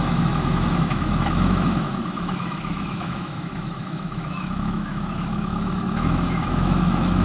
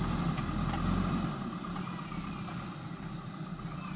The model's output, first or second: first